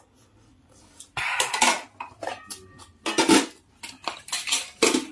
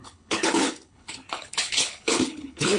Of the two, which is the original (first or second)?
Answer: first